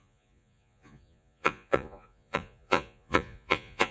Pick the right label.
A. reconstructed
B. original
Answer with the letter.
A